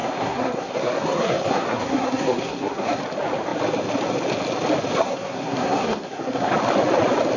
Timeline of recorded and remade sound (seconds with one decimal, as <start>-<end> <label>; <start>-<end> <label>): 0.0-3.0 remade; 3.0-5.0 recorded; 5.0-6.5 remade; 6.5-7.4 recorded